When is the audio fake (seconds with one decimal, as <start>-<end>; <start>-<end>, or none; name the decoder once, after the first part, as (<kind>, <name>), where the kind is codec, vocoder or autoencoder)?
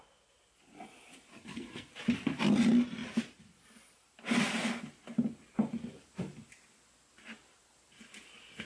1.3-1.9 (codec, SNAC)